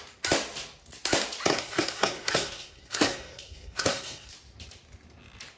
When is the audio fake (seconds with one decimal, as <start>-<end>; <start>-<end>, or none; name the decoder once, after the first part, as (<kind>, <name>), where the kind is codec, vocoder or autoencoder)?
1.5-4.3 (codec, SNAC)